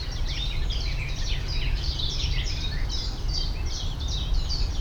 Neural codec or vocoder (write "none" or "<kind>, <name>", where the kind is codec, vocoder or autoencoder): vocoder, BigVGAN v2